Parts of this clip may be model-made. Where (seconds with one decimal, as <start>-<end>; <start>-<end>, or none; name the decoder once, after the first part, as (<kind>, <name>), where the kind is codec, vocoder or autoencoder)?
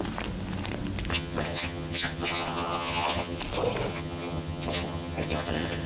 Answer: 1.1-3.4 (vocoder, HiFi-GAN); 3.9-5.9